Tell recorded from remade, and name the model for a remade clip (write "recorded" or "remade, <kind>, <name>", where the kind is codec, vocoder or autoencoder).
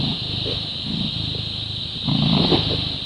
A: recorded